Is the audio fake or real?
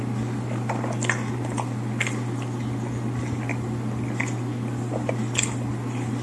real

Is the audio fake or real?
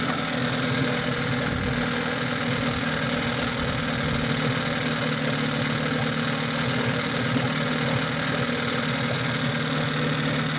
real